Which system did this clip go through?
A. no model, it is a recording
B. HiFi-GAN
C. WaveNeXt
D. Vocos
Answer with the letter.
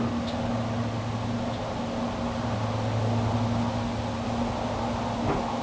A